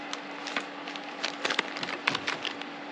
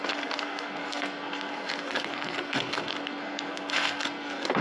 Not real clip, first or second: second